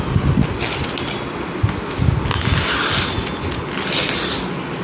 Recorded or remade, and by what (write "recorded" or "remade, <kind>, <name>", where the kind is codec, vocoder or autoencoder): recorded